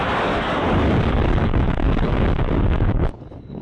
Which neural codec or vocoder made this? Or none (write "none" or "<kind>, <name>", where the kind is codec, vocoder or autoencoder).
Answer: codec, DAC